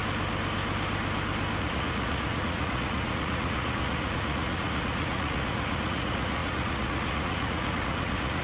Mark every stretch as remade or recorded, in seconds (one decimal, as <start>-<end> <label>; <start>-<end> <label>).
0.0-1.6 recorded; 1.6-8.4 remade